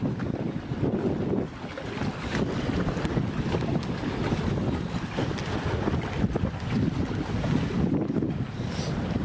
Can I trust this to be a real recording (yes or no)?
yes